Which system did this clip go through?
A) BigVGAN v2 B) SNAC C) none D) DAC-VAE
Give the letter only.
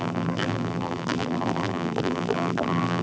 A